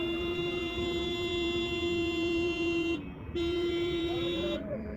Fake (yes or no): yes